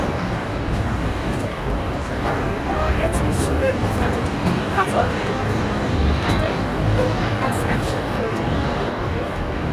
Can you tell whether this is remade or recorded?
remade